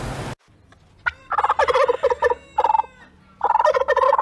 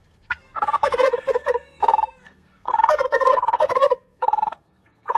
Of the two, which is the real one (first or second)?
first